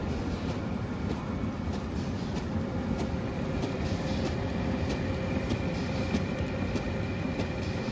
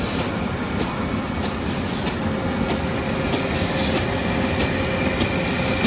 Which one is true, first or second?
second